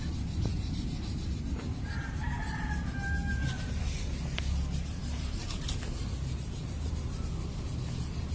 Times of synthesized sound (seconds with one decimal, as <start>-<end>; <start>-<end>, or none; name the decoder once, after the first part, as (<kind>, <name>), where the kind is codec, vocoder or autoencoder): 0.5-1.2 (vocoder, BigVGAN v2); 2.0-3.5